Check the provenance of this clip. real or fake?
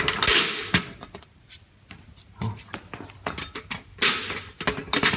real